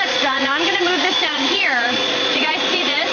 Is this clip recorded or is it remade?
remade